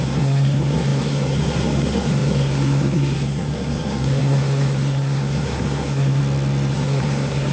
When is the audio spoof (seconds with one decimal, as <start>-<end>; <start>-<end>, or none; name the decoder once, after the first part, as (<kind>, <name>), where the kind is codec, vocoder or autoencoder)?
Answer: 0.0-6.2 (codec, SNAC); 6.7-7.5